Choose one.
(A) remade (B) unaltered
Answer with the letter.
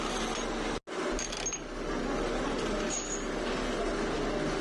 B